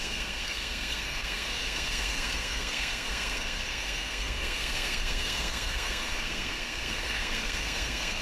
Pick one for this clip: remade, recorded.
remade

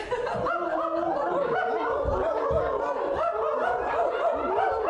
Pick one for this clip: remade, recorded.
recorded